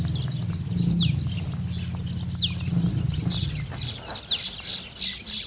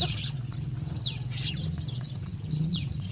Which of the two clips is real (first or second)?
first